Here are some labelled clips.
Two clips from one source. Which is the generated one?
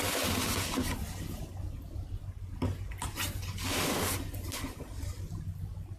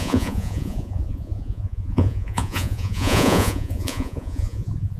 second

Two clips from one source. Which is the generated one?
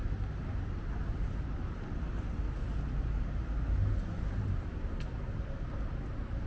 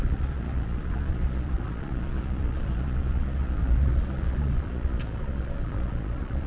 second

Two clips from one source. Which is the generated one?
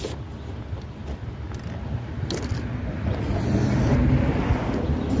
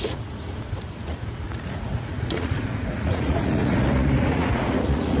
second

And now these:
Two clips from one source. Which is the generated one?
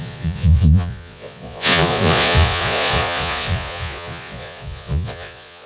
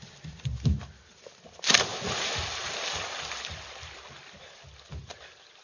first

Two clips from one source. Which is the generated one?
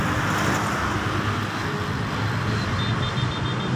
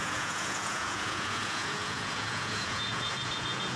second